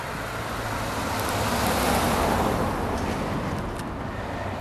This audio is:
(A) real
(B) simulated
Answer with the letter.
A